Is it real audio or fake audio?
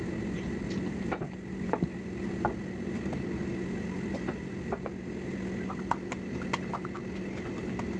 real